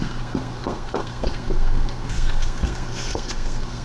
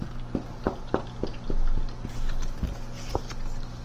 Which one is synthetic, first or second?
first